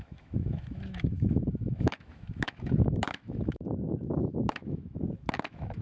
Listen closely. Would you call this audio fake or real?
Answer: fake